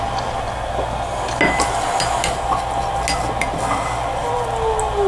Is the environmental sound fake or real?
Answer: real